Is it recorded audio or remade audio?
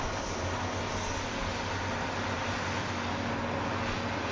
recorded